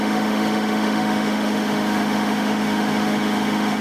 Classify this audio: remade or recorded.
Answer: remade